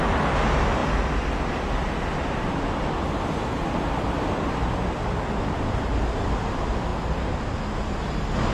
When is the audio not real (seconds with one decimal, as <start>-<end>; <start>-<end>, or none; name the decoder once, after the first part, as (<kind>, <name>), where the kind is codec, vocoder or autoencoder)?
none